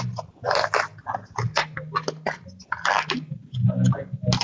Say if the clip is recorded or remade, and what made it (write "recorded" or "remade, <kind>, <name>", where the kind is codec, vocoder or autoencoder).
recorded